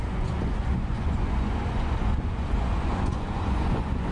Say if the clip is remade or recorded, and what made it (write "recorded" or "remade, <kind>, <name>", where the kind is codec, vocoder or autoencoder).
remade, vocoder, Vocos